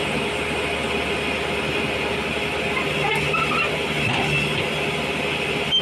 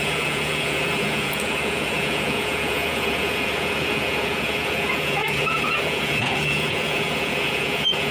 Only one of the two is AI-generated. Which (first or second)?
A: second